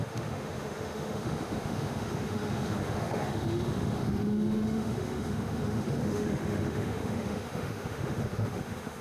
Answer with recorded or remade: remade